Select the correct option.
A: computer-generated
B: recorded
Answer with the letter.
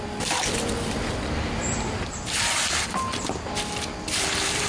B